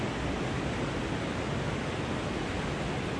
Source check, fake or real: real